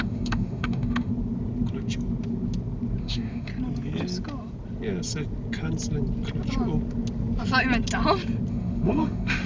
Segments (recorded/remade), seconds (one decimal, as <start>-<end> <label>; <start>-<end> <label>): 0.0-1.1 remade; 1.1-3.0 recorded; 3.0-3.5 remade; 3.5-8.5 recorded; 8.5-9.5 remade